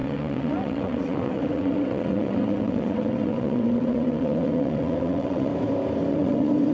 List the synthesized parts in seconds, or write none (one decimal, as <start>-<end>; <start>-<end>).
0.0-5.5; 6.1-6.7